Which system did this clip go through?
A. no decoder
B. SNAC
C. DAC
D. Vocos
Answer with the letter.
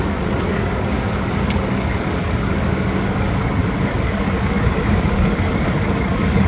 C